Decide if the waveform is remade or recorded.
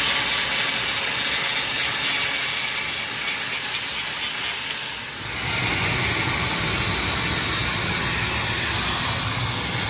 recorded